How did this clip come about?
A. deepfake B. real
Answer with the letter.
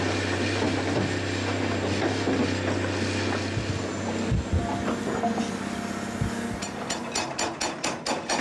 B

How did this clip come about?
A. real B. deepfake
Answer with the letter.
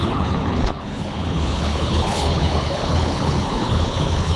B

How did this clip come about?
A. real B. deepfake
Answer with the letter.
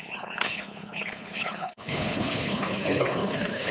B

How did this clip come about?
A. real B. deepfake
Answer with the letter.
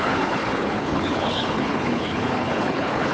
B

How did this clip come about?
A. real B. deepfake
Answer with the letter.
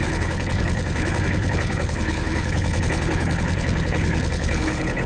B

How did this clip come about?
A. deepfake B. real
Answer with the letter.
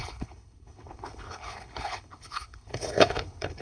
A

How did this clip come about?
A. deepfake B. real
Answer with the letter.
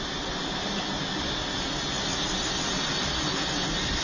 B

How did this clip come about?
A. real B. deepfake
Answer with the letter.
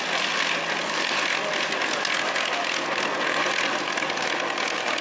A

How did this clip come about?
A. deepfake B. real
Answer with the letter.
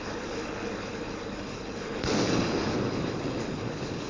A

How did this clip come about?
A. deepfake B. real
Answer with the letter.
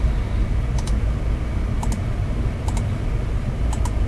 B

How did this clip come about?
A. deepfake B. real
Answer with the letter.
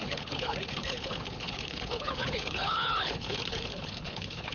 A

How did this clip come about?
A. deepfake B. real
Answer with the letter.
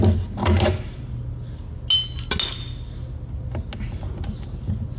B